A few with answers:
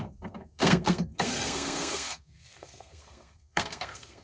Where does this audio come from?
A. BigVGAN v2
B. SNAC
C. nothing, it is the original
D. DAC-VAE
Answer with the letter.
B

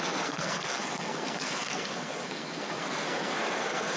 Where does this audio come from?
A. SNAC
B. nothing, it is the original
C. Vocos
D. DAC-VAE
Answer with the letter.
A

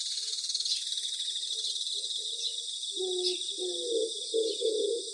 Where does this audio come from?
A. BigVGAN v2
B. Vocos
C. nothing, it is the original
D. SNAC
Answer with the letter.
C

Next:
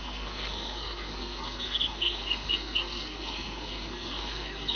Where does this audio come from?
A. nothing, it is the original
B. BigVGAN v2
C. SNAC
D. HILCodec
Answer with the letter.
C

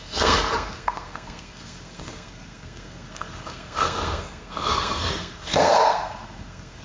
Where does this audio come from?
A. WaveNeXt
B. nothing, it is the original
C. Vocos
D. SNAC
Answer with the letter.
D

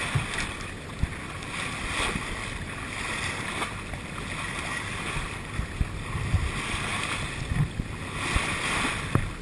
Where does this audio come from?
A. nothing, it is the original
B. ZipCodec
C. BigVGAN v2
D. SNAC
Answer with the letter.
A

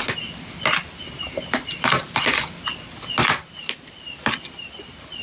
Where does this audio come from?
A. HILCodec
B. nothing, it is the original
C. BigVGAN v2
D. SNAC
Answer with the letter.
B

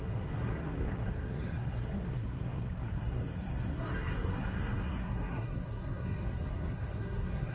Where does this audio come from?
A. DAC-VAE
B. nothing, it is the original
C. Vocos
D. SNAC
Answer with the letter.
D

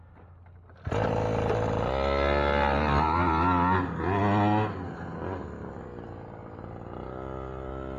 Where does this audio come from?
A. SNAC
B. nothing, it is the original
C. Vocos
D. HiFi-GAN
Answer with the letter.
B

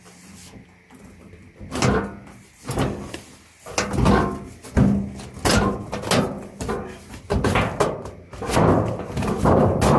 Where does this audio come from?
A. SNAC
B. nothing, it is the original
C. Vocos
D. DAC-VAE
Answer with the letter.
B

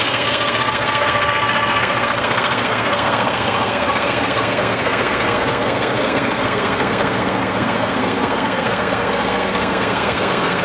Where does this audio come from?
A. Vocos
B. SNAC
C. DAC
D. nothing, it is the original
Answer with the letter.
B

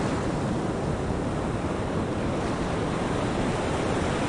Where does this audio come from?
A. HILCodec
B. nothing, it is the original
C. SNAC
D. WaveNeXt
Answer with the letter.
B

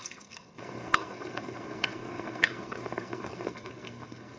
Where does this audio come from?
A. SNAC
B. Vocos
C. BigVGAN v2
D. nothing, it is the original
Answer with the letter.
A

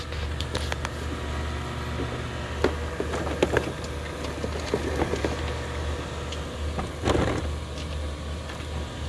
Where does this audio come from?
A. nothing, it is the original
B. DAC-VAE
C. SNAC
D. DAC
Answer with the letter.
A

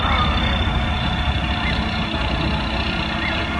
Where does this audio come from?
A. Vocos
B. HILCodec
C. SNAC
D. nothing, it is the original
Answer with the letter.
D